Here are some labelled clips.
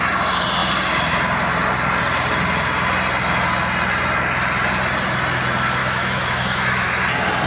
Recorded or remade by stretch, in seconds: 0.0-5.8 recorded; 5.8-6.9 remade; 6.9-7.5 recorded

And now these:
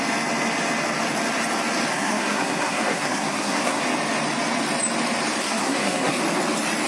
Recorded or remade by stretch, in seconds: 0.0-1.9 recorded; 1.9-3.8 remade; 3.8-5.4 recorded; 5.4-6.2 remade; 6.2-6.9 recorded